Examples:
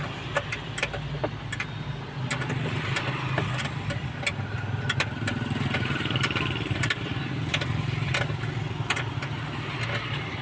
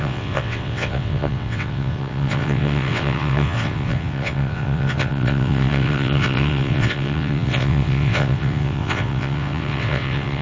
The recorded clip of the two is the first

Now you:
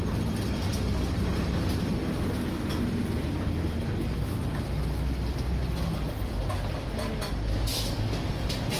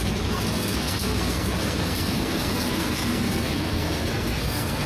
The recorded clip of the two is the first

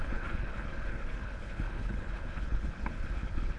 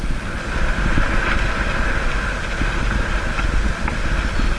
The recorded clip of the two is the second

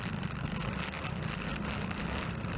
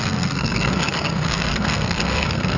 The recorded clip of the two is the first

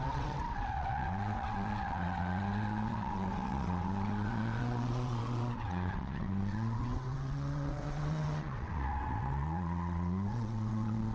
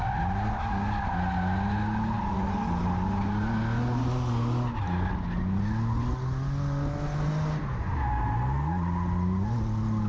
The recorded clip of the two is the second